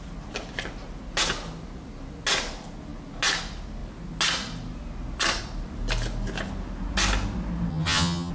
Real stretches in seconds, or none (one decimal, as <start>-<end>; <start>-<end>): 0.0-7.7